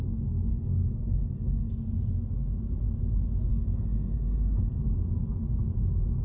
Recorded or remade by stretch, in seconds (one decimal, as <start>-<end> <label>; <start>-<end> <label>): 0.0-0.5 recorded; 0.5-1.7 remade; 1.7-3.5 recorded; 3.5-4.8 remade; 4.8-6.2 recorded